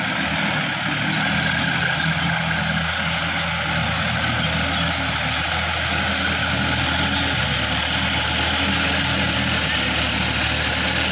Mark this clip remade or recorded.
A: recorded